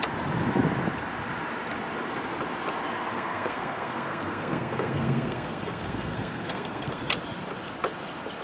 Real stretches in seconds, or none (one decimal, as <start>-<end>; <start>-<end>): 0.0-3.1; 7.0-8.4